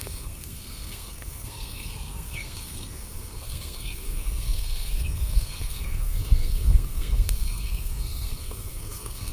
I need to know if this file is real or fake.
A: fake